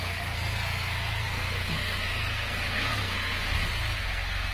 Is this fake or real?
fake